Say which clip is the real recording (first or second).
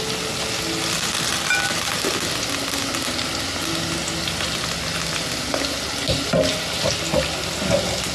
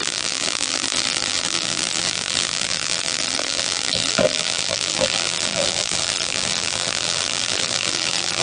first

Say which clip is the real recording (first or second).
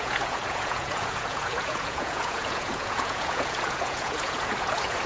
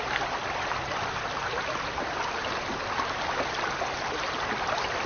second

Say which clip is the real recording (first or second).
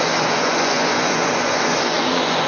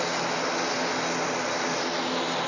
second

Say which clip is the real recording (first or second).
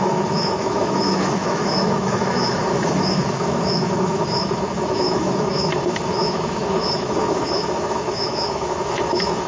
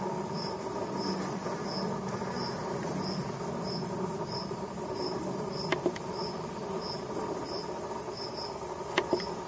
second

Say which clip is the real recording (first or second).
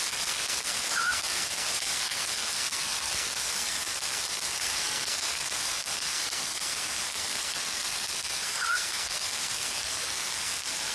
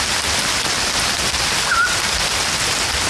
second